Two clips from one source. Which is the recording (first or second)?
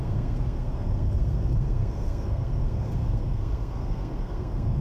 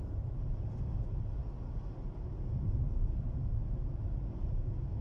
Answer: second